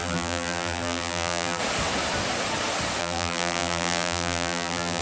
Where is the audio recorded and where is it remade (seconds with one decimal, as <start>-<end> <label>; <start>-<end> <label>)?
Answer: 0.0-1.6 remade; 1.6-3.0 recorded; 3.0-5.0 remade